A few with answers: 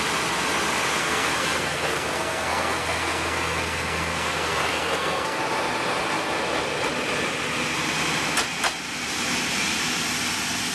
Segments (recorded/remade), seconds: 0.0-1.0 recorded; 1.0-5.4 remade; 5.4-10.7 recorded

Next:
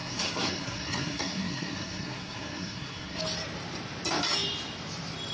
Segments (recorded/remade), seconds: 0.0-3.2 remade; 3.2-5.3 recorded

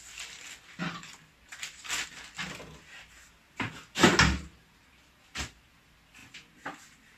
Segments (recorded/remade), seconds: 0.0-7.2 recorded

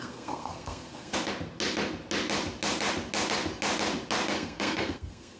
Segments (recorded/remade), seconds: 0.0-1.1 remade; 1.1-4.3 recorded; 4.3-5.4 remade

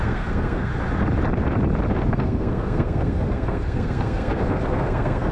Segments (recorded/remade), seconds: 0.0-0.7 remade; 0.7-1.9 recorded; 1.9-5.3 remade

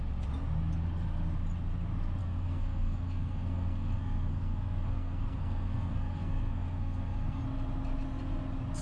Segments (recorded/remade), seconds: 0.0-2.2 recorded; 2.2-7.4 remade; 7.4-8.8 recorded